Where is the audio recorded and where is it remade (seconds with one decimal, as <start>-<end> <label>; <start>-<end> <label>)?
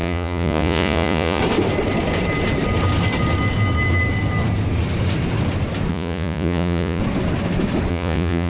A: 0.0-1.4 remade; 1.4-5.9 recorded; 5.9-7.0 remade; 7.0-7.9 recorded; 7.9-8.5 remade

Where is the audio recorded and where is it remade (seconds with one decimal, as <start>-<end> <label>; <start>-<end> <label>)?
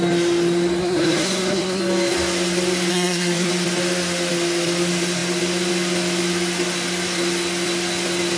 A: 0.0-0.8 recorded; 0.8-1.8 remade; 1.8-2.9 recorded; 2.9-3.5 remade; 3.5-8.4 recorded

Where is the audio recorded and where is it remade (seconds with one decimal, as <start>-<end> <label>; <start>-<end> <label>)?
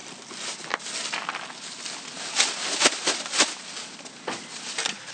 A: 0.0-5.1 recorded